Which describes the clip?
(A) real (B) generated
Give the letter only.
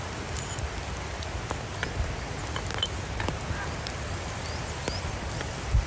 A